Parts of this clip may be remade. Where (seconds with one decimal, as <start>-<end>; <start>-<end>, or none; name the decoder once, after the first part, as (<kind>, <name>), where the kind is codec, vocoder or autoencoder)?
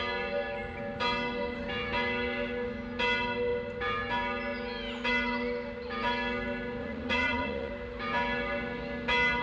6.8-7.7 (vocoder, Vocos)